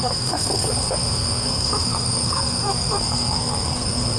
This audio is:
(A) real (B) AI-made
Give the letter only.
B